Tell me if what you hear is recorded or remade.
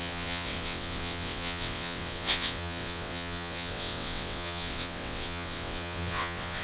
remade